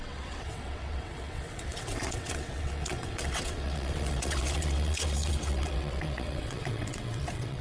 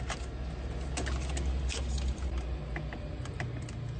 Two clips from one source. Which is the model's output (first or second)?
first